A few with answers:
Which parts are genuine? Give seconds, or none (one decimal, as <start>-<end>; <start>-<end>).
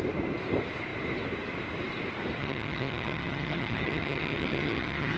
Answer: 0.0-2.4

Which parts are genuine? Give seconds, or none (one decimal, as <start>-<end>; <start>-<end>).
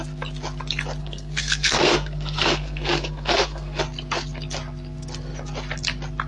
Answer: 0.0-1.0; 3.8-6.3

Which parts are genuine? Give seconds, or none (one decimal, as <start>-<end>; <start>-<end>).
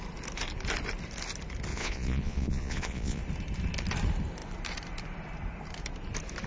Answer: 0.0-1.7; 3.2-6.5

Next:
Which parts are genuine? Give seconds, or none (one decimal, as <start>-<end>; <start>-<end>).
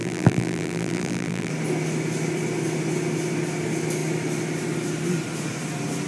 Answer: 1.5-6.1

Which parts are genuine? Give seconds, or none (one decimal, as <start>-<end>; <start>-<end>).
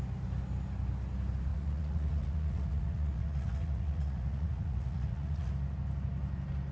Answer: 0.0-1.5; 5.5-6.7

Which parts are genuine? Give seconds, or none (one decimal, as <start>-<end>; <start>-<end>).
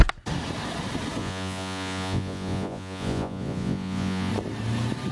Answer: 0.0-1.2; 4.3-5.1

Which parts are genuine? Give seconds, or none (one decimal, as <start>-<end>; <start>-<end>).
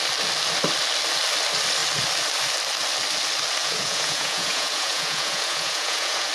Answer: 0.0-3.6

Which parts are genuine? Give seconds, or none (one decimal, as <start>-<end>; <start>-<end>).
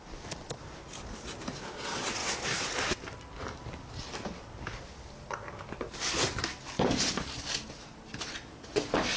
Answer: 0.0-9.2